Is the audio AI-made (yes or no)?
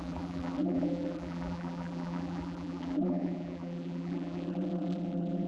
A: yes